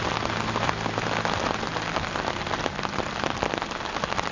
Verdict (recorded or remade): recorded